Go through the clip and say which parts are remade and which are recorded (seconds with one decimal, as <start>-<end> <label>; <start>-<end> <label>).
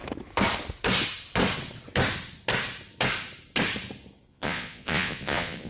0.0-4.3 recorded; 4.3-5.7 remade